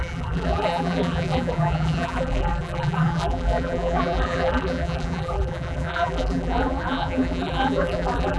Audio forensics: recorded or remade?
remade